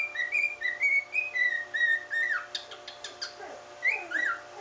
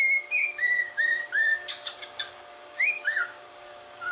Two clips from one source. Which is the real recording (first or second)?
first